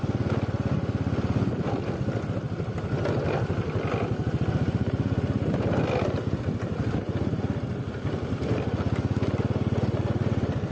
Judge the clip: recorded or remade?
recorded